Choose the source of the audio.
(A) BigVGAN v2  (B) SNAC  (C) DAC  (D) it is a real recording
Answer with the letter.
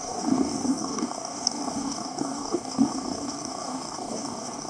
C